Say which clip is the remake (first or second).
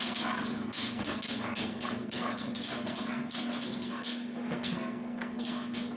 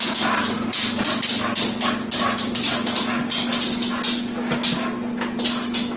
first